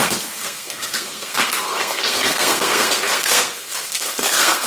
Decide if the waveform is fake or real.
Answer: fake